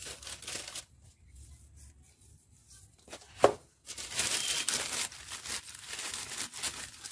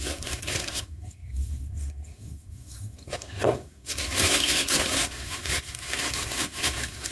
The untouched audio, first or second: first